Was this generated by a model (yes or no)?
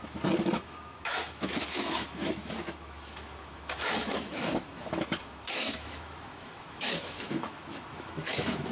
yes